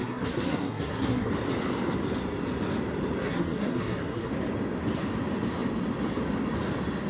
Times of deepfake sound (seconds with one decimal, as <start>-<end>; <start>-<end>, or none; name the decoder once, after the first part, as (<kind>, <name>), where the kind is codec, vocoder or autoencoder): 0.0-1.3 (codec, SNAC); 3.2-4.3